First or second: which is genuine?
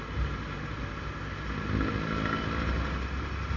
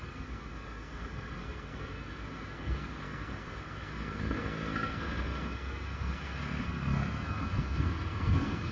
first